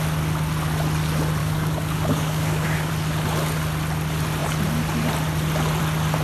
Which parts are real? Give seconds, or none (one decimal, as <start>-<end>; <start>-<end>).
0.0-1.4; 2.9-6.2